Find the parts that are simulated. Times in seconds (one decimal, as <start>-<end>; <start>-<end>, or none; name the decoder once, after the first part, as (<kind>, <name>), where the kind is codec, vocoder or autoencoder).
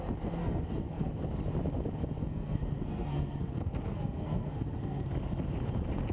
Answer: 0.4-1.1 (codec, SNAC); 2.2-5.1